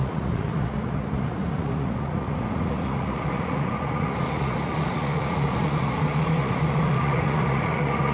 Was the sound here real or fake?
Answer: fake